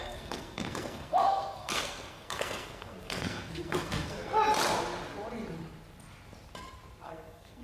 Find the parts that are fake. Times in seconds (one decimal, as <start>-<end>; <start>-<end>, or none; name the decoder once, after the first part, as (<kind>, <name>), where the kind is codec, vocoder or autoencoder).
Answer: 0.0-4.3 (codec, SNAC); 7.0-7.6